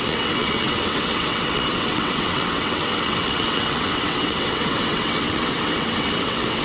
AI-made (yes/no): yes